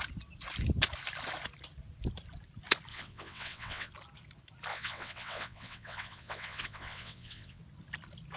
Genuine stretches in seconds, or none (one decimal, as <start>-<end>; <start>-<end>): 0.0-2.9; 3.9-4.7; 7.6-8.4